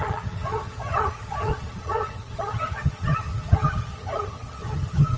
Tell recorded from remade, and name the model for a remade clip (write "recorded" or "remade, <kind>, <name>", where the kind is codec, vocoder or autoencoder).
remade, vocoder, HiFi-GAN